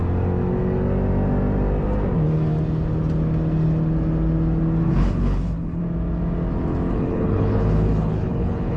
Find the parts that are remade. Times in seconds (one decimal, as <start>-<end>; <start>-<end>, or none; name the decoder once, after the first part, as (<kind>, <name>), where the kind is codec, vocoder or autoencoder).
4.9-5.8 (codec, HILCodec); 6.9-8.8